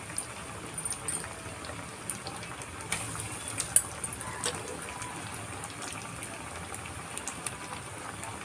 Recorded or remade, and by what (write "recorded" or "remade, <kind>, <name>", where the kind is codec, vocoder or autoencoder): recorded